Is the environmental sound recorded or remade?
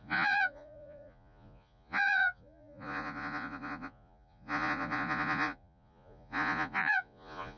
remade